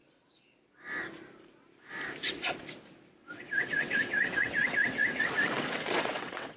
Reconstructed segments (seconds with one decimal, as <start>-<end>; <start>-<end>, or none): 3.2-6.6